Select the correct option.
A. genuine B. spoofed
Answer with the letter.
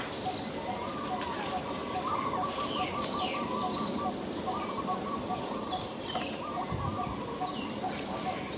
B